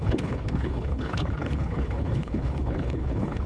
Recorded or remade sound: remade